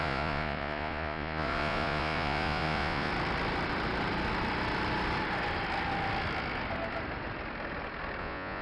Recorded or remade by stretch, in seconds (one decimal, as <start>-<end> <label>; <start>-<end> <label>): 0.0-3.1 remade; 3.1-8.2 recorded; 8.2-8.6 remade